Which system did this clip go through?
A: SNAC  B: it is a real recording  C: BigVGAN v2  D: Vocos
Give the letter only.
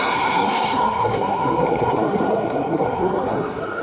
A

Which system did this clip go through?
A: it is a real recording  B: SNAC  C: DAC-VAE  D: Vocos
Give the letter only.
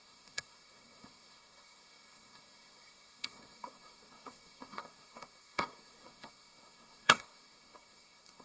B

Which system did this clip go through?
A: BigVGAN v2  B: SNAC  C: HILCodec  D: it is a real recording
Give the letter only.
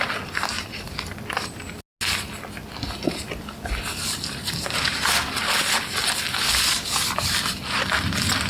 D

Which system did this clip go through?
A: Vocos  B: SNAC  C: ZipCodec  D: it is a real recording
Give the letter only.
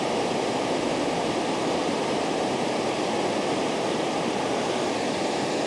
D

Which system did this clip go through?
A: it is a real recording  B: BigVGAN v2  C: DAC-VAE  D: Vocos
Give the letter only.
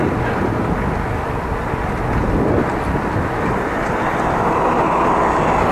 A